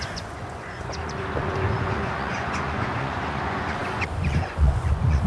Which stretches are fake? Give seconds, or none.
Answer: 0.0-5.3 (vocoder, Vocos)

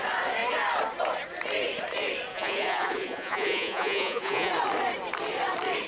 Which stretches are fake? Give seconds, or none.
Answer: 2.3-4.5 (vocoder, Vocos)

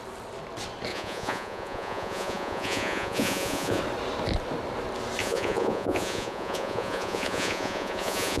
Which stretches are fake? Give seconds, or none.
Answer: 0.9-3.8 (vocoder, Vocos); 5.2-8.4

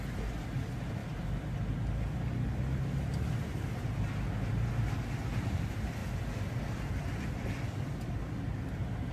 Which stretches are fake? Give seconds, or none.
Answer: none